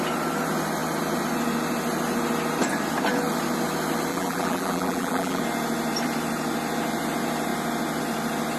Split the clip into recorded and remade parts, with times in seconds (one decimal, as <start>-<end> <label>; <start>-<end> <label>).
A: 0.0-4.1 recorded; 4.1-5.4 remade; 5.4-8.6 recorded